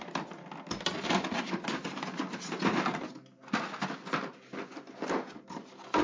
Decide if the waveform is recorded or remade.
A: recorded